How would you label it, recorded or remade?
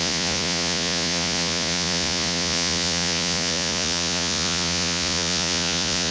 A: remade